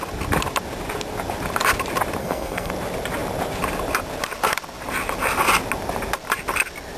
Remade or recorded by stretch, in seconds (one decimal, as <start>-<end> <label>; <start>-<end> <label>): 0.0-2.2 recorded; 2.2-2.7 remade; 2.7-7.0 recorded